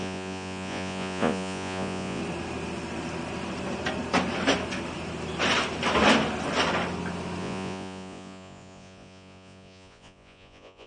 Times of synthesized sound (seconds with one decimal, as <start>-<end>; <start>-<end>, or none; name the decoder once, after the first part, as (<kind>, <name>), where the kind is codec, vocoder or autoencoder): 0.0-2.2 (vocoder, Vocos); 7.4-10.9